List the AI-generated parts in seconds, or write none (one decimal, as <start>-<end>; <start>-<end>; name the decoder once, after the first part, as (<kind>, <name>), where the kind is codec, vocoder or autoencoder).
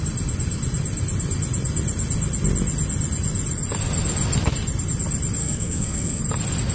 5.4-6.2 (codec, SNAC)